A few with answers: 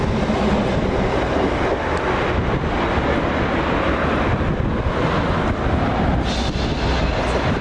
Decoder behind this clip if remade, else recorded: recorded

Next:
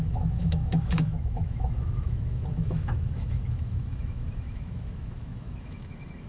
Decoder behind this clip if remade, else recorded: remade, autoencoder, DAC-VAE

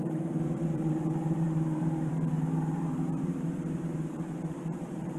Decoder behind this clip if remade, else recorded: remade, vocoder, BigVGAN v2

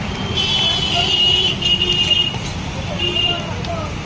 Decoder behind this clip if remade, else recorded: remade, vocoder, BigVGAN v2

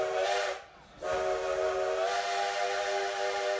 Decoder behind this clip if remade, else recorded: recorded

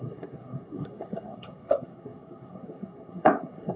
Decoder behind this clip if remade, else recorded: remade, codec, SNAC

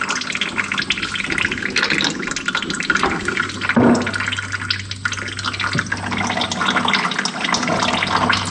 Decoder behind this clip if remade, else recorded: recorded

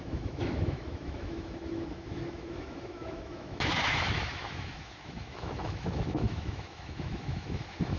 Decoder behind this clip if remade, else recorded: remade, autoencoder, DAC-VAE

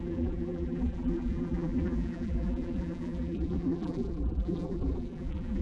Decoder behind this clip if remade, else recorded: remade, vocoder, BigVGAN v2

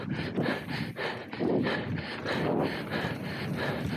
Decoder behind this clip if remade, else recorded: recorded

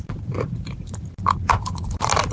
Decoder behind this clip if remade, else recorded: remade, vocoder, BigVGAN v2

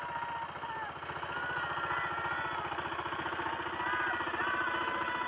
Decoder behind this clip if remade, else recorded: recorded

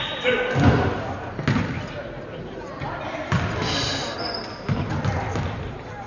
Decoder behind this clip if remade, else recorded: recorded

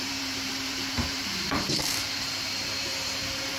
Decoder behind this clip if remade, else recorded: remade, vocoder, BigVGAN v2